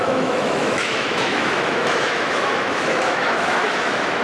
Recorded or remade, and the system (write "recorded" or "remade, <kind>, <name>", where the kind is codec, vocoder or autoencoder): remade, autoencoder, DAC-VAE